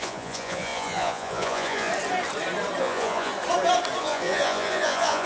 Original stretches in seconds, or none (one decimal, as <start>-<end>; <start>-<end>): 1.9-2.8; 3.3-4.0